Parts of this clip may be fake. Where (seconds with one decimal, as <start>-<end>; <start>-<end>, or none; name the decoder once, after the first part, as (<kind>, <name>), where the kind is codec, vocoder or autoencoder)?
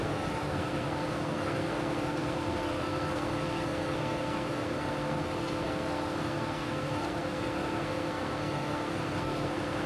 0.0-9.9 (codec, SNAC)